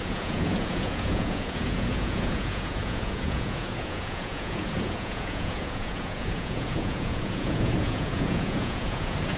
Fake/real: fake